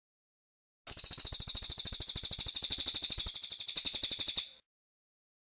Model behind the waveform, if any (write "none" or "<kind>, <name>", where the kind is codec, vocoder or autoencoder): none